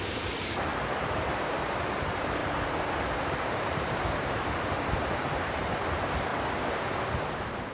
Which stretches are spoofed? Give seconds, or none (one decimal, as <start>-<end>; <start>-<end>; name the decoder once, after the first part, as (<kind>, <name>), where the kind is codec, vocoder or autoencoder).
0.0-0.7 (vocoder, BigVGAN v2); 1.2-6.3; 7.3-7.7